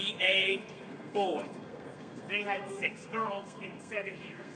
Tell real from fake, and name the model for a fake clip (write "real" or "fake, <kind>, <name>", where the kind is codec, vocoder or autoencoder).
fake, codec, SNAC